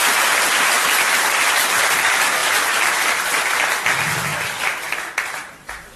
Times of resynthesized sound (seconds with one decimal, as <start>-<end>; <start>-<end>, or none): none